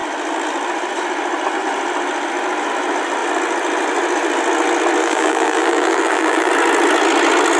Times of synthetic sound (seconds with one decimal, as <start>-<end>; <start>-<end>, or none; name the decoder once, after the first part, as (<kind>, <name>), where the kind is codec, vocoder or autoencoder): 5.0-6.5 (vocoder, BigVGAN v2)